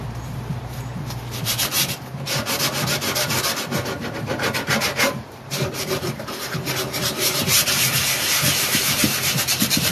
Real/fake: fake